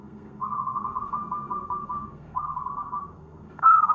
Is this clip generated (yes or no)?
yes